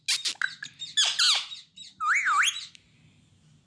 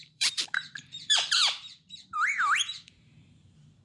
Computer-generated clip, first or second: second